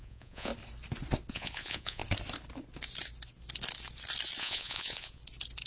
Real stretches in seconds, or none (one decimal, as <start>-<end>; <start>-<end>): 0.5-1.3; 2.0-4.4; 5.2-5.7